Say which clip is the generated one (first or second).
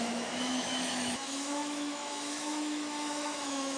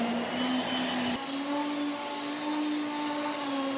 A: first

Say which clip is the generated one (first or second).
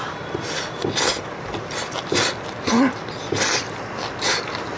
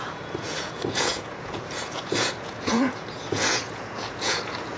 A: second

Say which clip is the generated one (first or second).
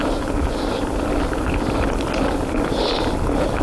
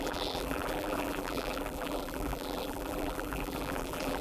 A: second